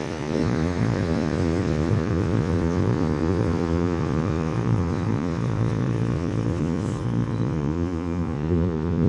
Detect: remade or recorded remade